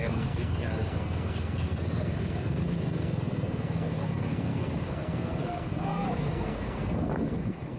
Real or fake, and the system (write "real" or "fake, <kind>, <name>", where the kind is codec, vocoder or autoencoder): fake, codec, SNAC